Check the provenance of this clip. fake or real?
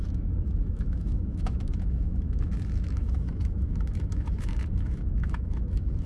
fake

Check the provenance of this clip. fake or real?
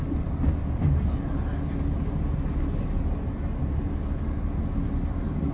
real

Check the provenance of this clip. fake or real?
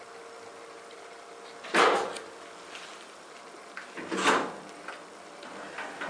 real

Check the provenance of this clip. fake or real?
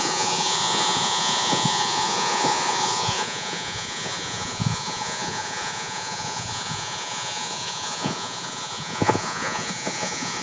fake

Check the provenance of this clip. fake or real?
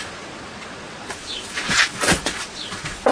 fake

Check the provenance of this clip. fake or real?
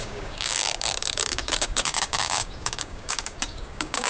fake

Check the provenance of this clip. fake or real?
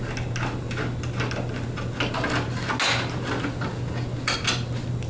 real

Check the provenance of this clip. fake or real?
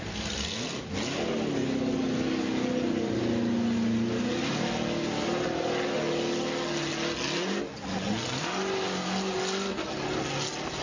real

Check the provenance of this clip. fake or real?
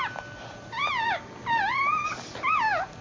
real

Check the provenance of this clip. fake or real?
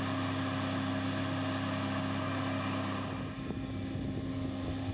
real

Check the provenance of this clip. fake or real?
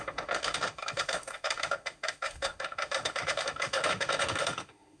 fake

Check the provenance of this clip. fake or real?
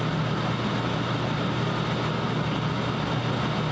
real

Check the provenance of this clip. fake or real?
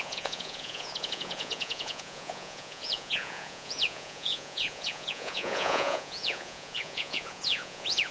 fake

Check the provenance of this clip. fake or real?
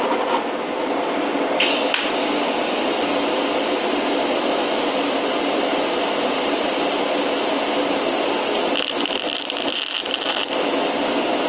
real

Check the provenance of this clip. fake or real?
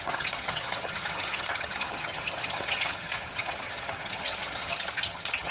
fake